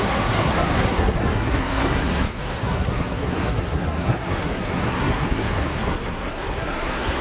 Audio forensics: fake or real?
fake